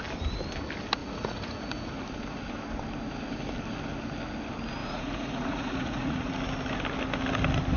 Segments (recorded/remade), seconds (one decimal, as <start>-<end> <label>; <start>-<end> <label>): 0.0-1.0 recorded; 1.0-1.9 remade; 1.9-4.8 recorded; 4.8-6.3 remade; 6.3-7.8 recorded